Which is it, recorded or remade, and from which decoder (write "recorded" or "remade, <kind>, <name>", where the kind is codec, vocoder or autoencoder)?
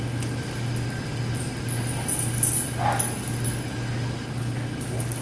recorded